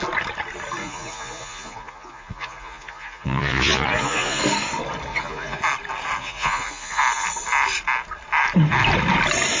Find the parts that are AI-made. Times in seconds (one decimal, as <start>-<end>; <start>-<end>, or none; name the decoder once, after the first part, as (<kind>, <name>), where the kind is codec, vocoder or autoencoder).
0.8-4.4 (vocoder, Vocos); 5.1-5.6; 6.2-7.0

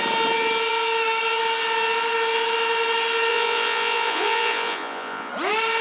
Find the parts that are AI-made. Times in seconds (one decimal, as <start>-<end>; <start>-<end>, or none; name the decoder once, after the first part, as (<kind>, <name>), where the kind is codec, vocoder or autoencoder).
3.3-5.3 (vocoder, Vocos)

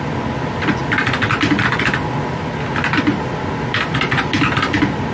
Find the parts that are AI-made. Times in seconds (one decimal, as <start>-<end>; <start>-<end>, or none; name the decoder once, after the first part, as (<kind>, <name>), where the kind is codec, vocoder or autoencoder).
none

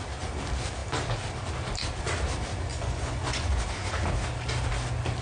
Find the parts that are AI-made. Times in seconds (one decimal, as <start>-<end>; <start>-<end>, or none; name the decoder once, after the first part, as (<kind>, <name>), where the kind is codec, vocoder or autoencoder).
2.7-3.6 (vocoder, Vocos)

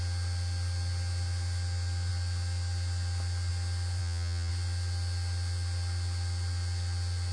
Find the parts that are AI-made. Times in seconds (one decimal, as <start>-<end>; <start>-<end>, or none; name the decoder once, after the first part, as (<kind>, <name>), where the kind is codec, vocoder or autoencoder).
4.0-4.5 (vocoder, Vocos)